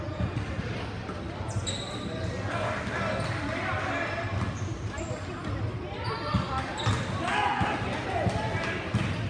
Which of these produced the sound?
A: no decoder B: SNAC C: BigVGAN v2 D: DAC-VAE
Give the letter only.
A